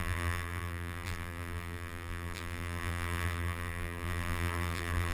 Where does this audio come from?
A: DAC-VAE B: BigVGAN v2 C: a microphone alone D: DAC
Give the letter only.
B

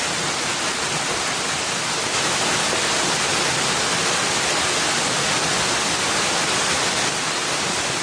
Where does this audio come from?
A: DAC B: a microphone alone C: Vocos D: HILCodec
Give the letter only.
B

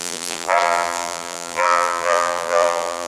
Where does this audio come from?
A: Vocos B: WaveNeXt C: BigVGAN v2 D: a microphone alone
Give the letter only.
C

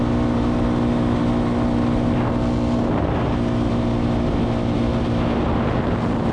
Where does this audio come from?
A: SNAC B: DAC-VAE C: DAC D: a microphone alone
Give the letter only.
D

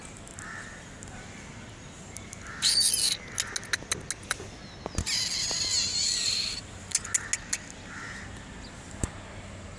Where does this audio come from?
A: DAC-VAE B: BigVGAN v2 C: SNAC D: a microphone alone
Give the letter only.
D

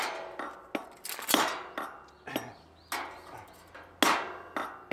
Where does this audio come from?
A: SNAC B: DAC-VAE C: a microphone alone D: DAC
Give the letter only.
C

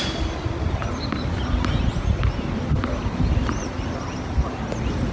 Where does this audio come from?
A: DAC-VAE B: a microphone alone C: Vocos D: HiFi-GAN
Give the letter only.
B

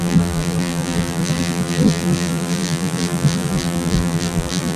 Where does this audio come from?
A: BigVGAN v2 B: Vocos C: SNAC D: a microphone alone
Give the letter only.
A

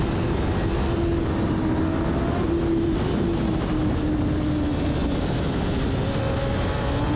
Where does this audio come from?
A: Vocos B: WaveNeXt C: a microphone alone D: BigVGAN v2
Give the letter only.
C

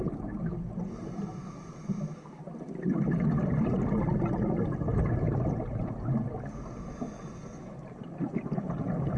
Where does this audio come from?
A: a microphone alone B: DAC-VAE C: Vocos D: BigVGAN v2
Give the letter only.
A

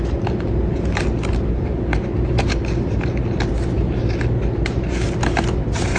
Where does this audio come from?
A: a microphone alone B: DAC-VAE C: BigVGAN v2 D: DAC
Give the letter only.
A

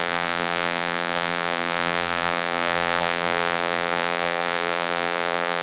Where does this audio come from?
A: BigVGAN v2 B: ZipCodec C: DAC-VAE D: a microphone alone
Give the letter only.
A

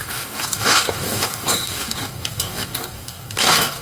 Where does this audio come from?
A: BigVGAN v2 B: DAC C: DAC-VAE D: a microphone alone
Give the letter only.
B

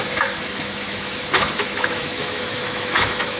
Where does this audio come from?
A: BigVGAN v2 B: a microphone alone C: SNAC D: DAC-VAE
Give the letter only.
D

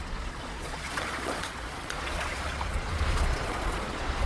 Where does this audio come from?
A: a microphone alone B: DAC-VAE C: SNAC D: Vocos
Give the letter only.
D